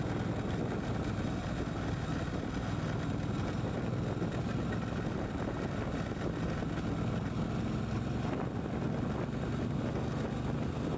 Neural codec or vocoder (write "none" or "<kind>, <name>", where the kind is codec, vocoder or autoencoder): none